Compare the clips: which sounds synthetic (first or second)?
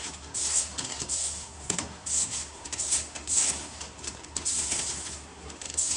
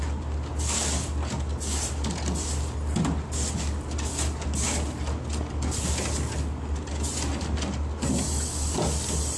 first